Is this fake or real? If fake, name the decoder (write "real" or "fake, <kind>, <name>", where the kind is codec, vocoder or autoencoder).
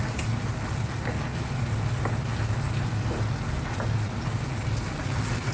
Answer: real